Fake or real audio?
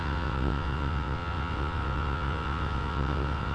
fake